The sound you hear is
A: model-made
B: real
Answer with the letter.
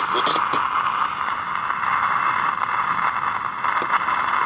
B